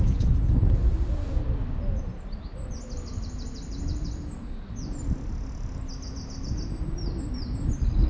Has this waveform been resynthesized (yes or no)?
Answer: no